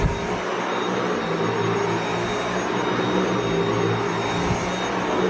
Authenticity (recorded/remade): recorded